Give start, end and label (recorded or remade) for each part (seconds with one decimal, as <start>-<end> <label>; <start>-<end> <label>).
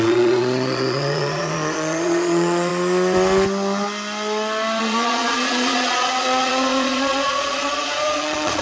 0.0-2.7 remade; 2.7-4.8 recorded; 4.8-8.6 remade